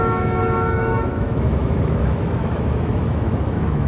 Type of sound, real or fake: fake